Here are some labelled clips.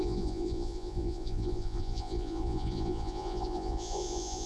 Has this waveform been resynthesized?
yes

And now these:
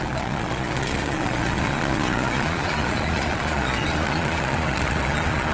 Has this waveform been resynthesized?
yes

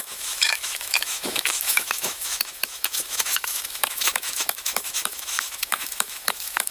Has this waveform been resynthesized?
yes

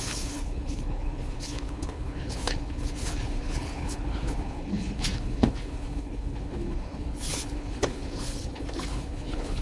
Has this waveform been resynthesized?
yes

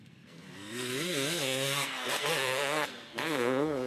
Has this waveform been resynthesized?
yes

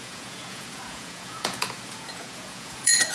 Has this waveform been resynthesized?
yes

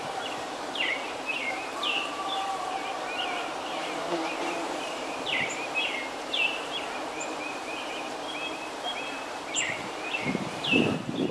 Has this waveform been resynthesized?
yes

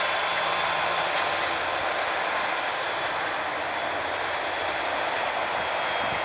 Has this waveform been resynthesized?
no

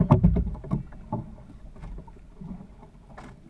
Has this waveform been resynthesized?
no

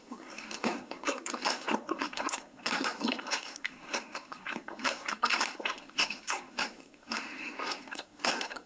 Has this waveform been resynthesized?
yes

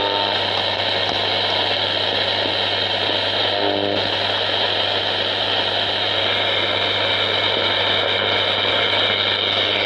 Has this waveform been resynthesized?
no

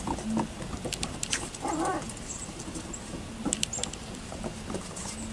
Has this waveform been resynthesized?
no